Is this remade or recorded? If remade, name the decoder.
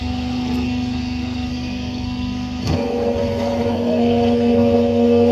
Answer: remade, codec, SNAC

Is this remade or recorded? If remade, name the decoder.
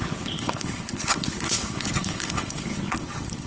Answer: remade, codec, HILCodec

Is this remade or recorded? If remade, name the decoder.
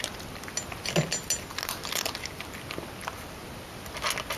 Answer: recorded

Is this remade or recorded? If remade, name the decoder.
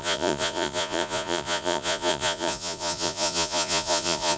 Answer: remade, vocoder, Vocos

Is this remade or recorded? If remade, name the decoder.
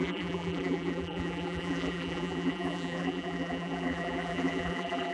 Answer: remade, vocoder, BigVGAN v2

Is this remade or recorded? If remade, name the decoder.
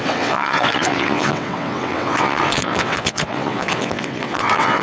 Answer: remade, vocoder, WaveNeXt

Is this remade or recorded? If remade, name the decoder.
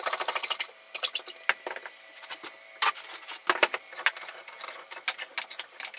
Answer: recorded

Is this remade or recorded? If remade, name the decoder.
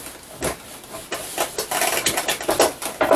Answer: recorded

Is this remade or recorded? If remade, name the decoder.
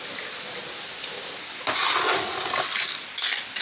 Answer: recorded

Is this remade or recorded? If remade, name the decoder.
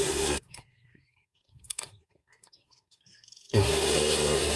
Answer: remade, codec, SNAC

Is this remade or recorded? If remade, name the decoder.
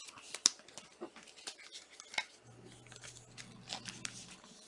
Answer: recorded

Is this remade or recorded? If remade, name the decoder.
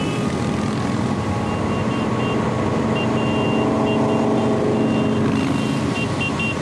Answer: recorded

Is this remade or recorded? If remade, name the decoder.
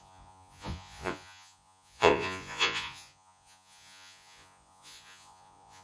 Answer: remade, vocoder, Vocos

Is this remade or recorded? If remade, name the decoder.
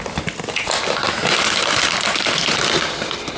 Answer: recorded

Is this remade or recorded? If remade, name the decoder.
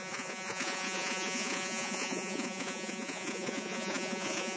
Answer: remade, vocoder, Vocos